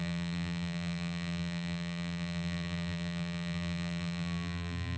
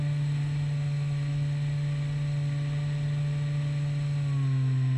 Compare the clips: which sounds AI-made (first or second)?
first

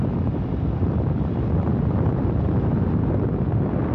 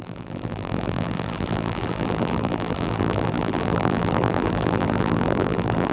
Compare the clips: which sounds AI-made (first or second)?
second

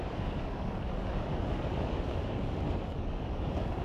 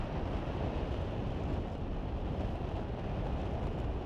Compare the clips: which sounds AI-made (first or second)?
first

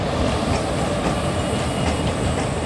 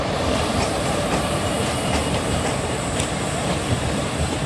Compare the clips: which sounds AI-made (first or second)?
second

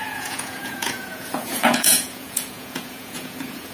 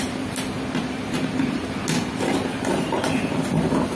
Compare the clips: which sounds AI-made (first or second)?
first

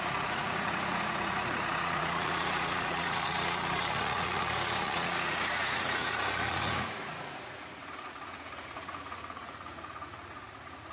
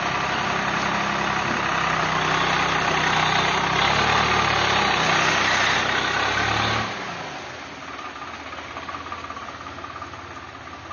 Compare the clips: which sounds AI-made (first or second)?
first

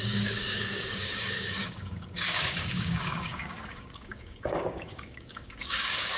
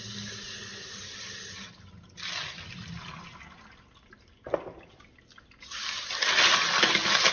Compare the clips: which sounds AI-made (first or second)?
first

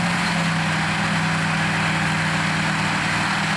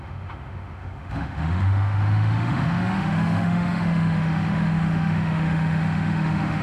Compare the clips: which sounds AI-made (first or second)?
second